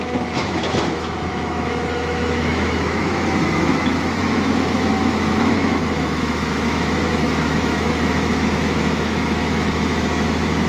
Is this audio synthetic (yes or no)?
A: yes